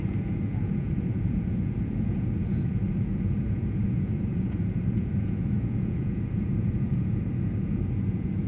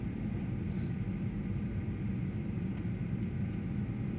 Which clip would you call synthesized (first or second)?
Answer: first